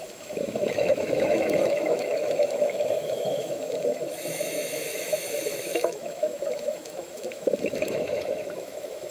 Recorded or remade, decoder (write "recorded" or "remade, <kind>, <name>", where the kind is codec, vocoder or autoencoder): remade, autoencoder, DAC-VAE